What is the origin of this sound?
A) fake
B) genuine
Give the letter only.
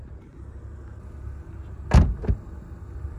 B